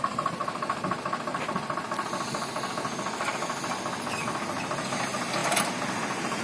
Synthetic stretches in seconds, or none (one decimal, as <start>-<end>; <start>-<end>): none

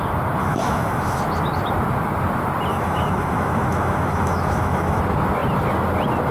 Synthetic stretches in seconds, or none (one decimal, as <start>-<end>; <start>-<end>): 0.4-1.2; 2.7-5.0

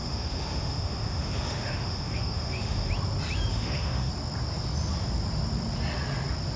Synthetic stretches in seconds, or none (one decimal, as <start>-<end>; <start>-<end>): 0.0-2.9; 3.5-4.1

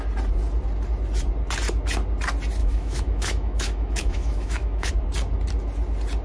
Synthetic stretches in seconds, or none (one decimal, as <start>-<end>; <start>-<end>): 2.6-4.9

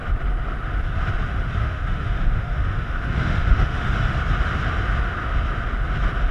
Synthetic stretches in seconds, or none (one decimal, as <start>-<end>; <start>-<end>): 1.6-3.9